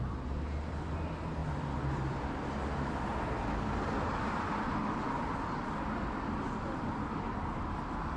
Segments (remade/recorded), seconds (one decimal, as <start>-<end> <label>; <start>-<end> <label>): 0.0-1.4 recorded; 1.4-2.2 remade; 2.2-8.2 recorded